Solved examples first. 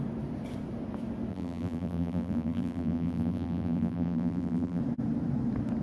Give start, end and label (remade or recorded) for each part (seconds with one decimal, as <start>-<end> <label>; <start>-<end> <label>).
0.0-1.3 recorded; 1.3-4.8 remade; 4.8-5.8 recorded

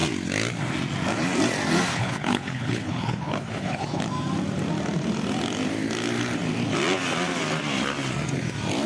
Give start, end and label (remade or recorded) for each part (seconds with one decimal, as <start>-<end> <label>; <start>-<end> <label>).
0.0-1.9 recorded; 1.9-4.0 remade; 4.0-8.9 recorded

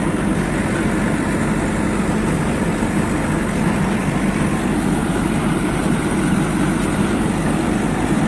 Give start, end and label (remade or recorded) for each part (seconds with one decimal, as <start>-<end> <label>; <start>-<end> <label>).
0.0-5.0 recorded; 5.0-6.2 remade; 6.2-8.3 recorded

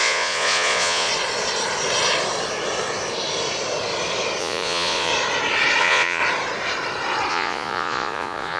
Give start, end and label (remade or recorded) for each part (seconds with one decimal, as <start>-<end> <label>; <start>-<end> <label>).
0.0-1.1 remade; 1.1-4.4 recorded; 4.4-5.1 remade; 5.1-5.8 recorded; 5.8-6.2 remade; 6.2-7.3 recorded; 7.3-8.6 remade

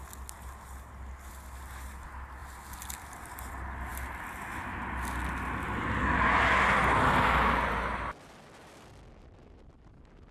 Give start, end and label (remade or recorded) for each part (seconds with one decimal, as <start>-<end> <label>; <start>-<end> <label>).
0.0-10.3 recorded

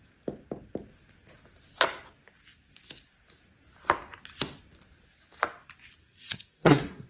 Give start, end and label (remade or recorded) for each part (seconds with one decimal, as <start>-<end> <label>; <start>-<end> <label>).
0.0-6.0 recorded; 6.0-7.1 remade